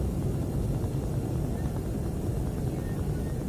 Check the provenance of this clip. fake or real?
real